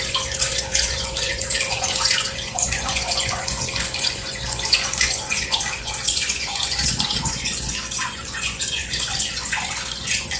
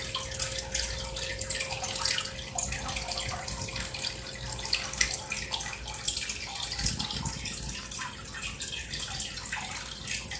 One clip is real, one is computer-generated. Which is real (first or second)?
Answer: second